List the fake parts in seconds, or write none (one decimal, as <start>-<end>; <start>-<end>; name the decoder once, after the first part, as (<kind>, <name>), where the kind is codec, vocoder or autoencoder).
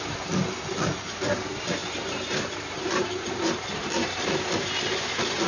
1.8-3.4 (vocoder, BigVGAN v2)